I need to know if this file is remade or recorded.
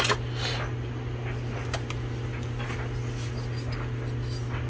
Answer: recorded